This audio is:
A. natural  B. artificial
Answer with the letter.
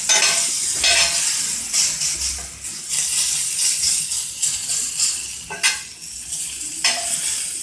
A